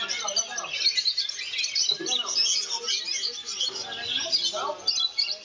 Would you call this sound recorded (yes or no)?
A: yes